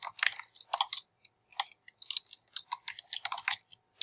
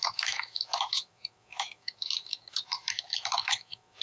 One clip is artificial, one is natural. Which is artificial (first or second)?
second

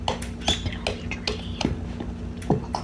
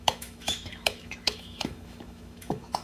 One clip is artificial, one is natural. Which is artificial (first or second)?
second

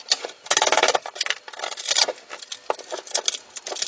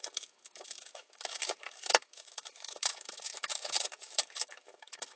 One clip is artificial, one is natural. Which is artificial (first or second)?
second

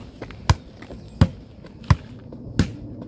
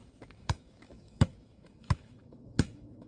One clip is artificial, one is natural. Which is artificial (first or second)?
second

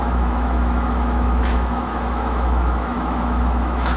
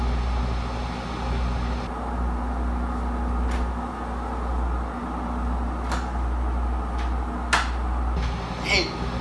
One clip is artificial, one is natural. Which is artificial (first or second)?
first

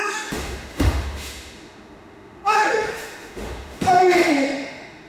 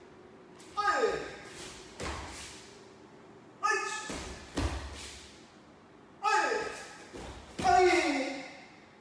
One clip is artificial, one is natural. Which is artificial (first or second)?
first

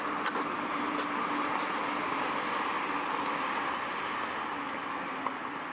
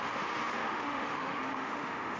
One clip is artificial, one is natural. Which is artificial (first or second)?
second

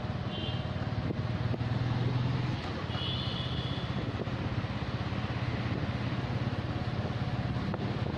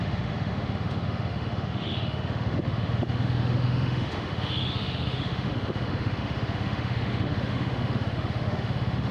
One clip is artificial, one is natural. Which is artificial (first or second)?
second